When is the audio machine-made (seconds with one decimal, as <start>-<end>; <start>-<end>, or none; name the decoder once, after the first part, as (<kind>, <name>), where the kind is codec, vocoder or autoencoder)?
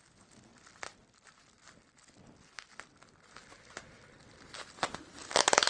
none